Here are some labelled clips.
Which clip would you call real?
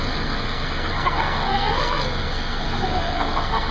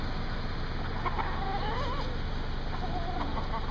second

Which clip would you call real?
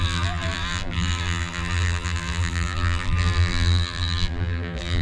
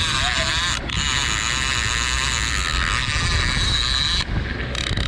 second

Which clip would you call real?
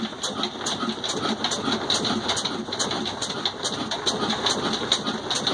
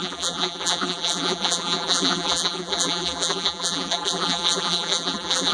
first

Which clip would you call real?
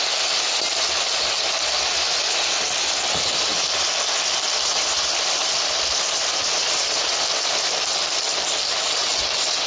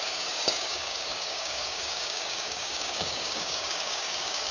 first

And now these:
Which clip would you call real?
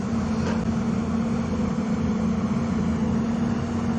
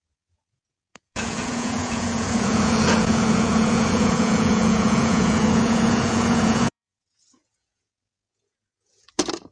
first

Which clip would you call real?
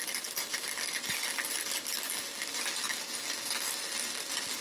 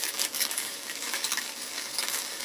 first